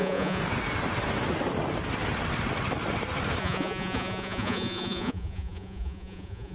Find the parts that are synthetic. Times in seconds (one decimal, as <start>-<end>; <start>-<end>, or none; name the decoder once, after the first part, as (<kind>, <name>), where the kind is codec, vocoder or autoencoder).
0.0-0.4 (vocoder, Vocos); 3.4-6.5